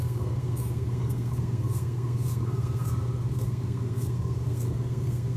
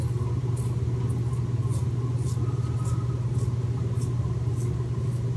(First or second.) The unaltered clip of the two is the second